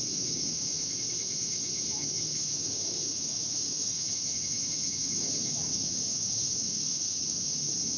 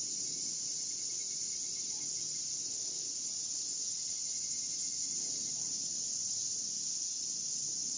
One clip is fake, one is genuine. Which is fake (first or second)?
first